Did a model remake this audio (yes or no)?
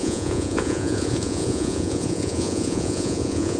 yes